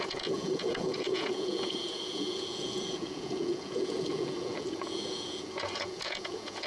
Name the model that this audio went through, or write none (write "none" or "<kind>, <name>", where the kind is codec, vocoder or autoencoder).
vocoder, Vocos